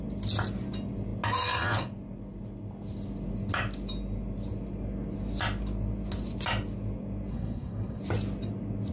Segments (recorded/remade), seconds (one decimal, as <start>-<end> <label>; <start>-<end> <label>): 0.0-7.3 recorded; 7.3-8.0 remade; 8.0-8.9 recorded